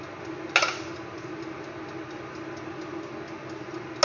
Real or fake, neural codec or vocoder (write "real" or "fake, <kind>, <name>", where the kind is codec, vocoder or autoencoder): real